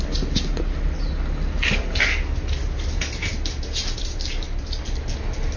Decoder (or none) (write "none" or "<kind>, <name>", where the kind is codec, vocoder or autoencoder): none